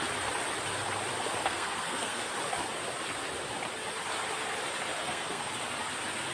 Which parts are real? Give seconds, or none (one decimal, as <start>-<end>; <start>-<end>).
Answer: 0.0-1.4; 2.2-5.0; 5.5-6.3